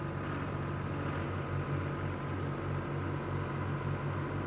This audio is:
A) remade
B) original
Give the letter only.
B